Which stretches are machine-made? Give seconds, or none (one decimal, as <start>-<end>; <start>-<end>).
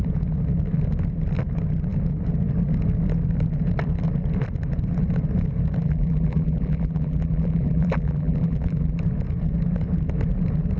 5.8-9.0